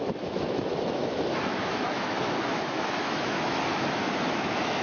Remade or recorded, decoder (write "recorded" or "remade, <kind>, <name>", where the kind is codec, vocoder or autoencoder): remade, autoencoder, DAC-VAE